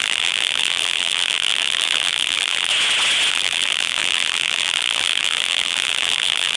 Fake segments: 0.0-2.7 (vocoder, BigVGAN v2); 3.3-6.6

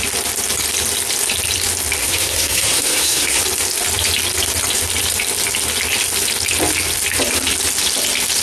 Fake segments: 2.0-3.4 (codec, SNAC)